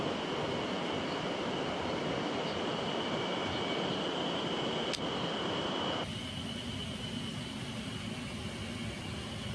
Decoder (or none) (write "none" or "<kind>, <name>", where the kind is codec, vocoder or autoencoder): none